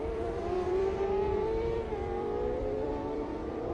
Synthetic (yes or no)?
yes